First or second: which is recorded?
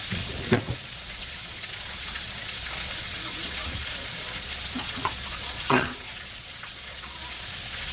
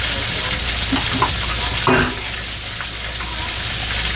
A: second